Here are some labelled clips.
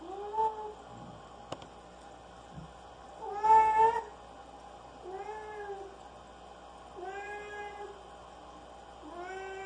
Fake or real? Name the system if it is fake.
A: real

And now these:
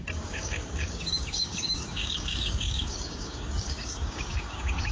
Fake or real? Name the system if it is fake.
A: fake, codec, DAC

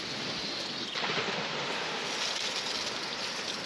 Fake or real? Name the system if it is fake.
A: real